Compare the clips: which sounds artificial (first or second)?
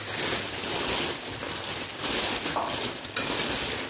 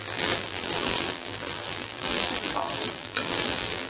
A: second